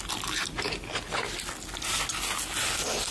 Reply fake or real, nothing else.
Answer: real